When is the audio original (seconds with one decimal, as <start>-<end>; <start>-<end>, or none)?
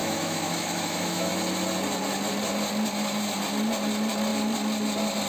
1.3-5.3